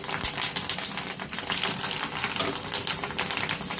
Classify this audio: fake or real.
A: fake